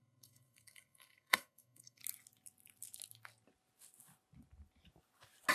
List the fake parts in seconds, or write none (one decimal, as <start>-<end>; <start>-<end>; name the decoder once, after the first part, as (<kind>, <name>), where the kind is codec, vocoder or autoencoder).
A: 0.0-2.0 (codec, SNAC)